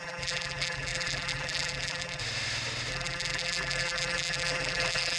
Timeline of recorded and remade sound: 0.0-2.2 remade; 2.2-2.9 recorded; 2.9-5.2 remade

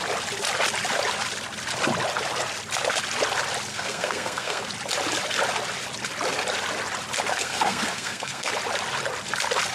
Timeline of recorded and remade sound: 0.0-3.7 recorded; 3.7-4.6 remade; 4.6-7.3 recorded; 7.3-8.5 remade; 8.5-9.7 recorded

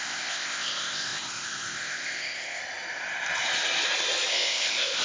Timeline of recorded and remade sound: 0.0-2.6 remade; 2.6-4.3 recorded; 4.3-5.0 remade

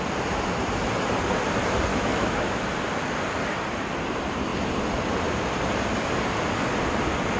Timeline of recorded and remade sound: 0.0-1.9 recorded; 1.9-2.7 remade; 2.7-7.4 recorded

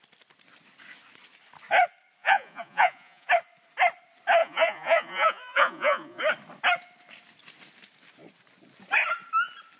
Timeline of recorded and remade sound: 0.0-2.2 recorded; 2.2-3.3 remade; 3.3-4.4 recorded; 4.4-6.2 remade; 6.2-9.8 recorded

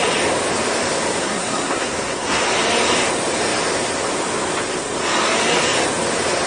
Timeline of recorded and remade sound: 0.0-1.2 recorded; 1.2-2.4 remade; 2.4-6.5 recorded

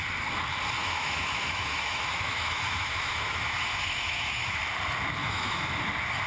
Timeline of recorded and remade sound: 0.0-0.8 recorded; 0.8-4.6 remade; 4.6-5.2 recorded; 5.2-5.8 remade; 5.8-6.3 recorded

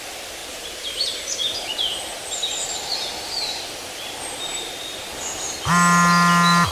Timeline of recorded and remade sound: 0.0-0.4 recorded; 0.4-3.1 remade; 3.1-6.7 recorded